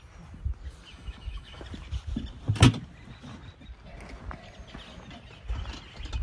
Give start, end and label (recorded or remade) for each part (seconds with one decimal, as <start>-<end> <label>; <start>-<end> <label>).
0.0-0.9 recorded; 0.9-1.6 remade; 1.6-6.2 recorded